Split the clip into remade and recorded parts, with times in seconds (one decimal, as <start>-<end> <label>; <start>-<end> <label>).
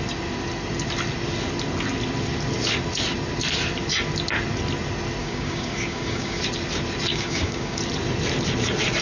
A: 0.0-5.2 recorded; 5.2-6.4 remade; 6.4-7.1 recorded; 7.1-7.8 remade; 7.8-9.0 recorded